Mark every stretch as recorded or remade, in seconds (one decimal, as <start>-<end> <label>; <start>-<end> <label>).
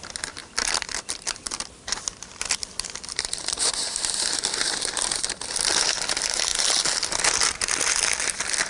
0.0-0.4 recorded; 0.4-4.9 remade; 4.9-8.7 recorded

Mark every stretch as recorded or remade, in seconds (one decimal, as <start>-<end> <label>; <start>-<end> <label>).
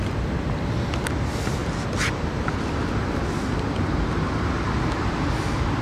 0.0-1.6 remade; 1.6-2.1 recorded; 2.1-5.8 remade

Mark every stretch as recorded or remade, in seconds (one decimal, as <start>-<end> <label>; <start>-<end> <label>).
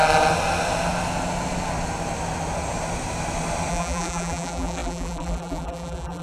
0.0-3.7 recorded; 3.7-6.2 remade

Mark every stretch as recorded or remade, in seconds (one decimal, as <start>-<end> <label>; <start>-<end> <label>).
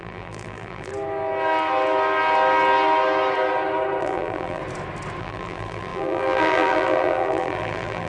0.0-0.9 remade; 0.9-4.0 recorded; 4.0-4.6 remade; 4.6-5.2 recorded; 5.2-8.1 remade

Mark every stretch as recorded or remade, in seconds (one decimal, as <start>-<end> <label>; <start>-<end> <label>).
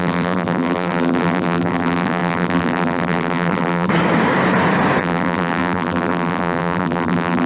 0.0-3.9 remade; 3.9-5.0 recorded; 5.0-7.5 remade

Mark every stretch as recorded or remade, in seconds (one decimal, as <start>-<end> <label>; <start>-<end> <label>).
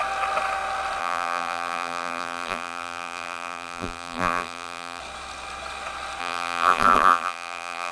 0.0-1.0 recorded; 1.0-5.0 remade; 5.0-6.2 recorded; 6.2-7.9 remade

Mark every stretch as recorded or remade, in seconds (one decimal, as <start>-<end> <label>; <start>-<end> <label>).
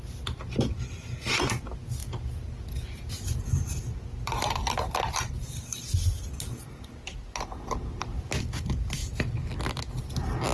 0.0-10.5 recorded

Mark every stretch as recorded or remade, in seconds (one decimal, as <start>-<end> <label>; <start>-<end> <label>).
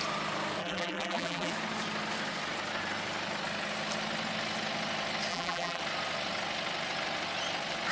0.0-0.6 recorded; 0.6-1.5 remade; 1.5-5.3 recorded; 5.3-5.8 remade; 5.8-7.9 recorded